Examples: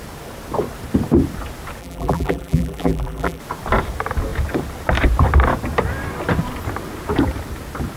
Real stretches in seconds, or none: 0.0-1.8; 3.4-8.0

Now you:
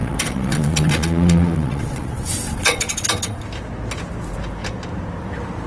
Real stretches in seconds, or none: 3.4-5.7

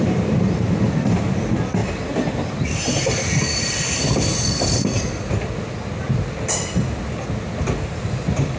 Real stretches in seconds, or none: 0.0-8.6

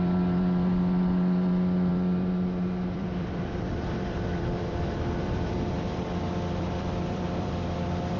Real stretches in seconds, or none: none

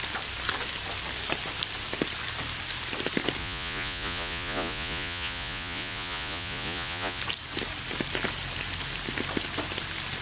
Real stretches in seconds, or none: 0.0-3.4; 7.2-10.2

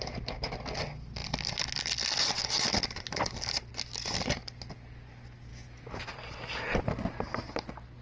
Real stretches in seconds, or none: 0.0-5.5; 6.1-8.0